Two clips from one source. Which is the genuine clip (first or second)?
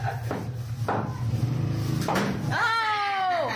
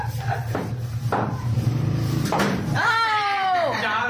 first